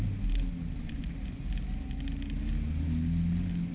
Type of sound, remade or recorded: recorded